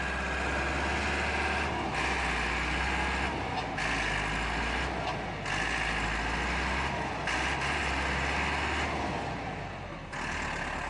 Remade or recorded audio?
recorded